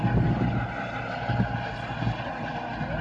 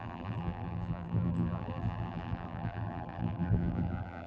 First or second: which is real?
first